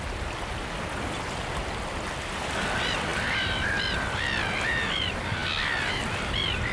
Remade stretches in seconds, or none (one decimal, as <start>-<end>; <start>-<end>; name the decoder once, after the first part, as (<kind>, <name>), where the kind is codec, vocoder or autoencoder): none